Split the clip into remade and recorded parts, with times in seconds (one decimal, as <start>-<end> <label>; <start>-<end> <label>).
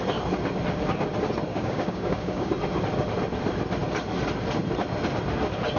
0.0-1.5 recorded; 1.5-2.5 remade; 2.5-5.8 recorded